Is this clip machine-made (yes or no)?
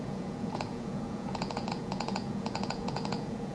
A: yes